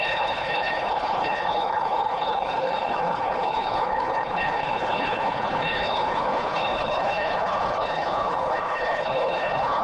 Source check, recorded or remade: remade